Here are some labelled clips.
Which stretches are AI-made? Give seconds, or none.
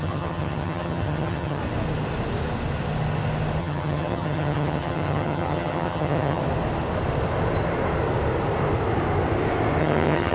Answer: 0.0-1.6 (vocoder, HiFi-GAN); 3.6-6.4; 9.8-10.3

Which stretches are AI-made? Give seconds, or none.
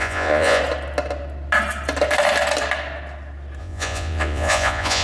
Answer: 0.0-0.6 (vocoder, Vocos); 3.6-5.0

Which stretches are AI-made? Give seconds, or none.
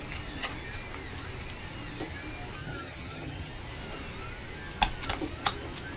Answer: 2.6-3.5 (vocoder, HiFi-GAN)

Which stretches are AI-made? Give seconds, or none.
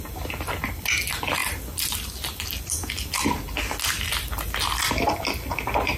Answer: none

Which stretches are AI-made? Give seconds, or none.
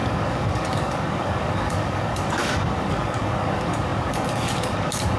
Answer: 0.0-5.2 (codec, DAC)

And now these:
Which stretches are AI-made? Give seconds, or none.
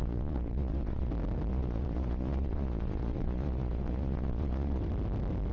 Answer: 0.0-1.1 (vocoder, Vocos); 1.5-4.8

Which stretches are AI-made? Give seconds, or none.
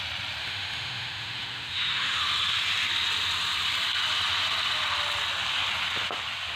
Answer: 0.4-2.2 (autoencoder, DAC-VAE)